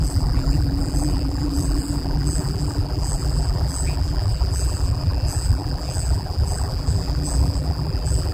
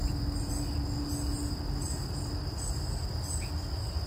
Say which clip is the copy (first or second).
first